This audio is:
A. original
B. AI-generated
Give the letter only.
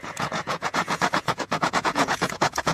B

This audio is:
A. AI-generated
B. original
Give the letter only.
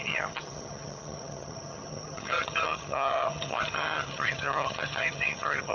A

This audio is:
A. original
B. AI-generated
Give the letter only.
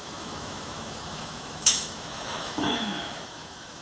B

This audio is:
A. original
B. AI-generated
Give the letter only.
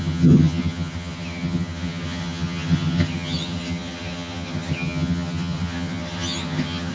B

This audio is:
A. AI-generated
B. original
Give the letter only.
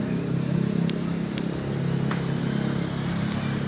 B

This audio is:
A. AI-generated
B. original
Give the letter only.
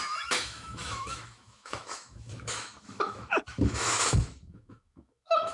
A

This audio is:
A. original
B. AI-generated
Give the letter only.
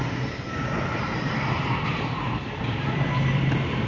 B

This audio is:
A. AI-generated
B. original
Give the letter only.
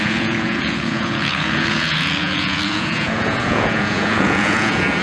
A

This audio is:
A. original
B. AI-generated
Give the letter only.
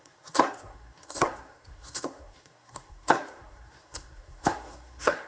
B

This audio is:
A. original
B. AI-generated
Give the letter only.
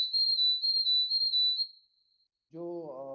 A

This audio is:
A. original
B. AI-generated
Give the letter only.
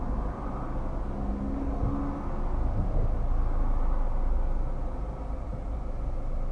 A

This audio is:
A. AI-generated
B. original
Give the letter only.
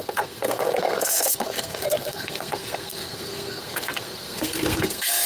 A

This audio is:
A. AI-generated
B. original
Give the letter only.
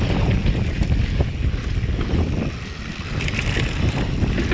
B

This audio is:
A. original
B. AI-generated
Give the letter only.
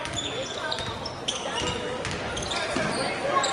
A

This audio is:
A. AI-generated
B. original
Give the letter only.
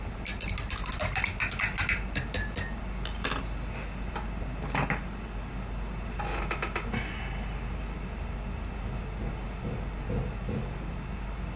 B